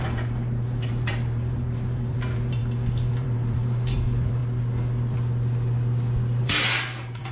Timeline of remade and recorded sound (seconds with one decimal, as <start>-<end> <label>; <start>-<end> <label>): 0.0-2.6 remade; 2.6-3.1 recorded; 3.1-4.4 remade; 4.4-6.4 recorded; 6.4-7.3 remade